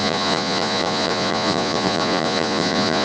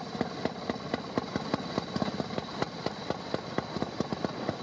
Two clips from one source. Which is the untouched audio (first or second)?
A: second